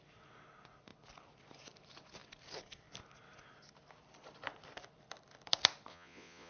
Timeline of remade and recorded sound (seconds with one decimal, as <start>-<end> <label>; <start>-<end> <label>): 0.0-5.9 recorded; 5.9-6.5 remade